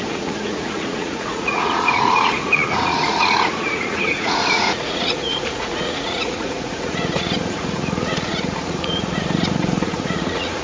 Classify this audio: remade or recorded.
remade